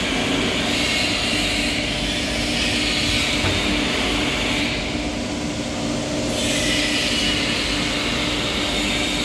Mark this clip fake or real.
real